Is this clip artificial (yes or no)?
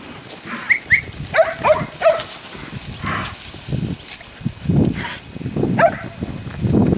no